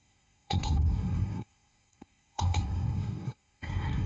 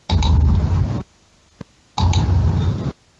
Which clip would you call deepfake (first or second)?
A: first